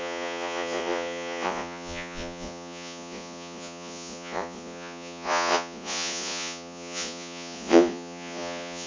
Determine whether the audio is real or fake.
fake